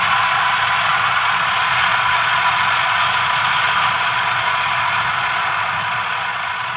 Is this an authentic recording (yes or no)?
no